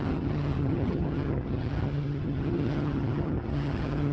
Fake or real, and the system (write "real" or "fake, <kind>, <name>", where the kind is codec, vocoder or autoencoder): fake, vocoder, HiFi-GAN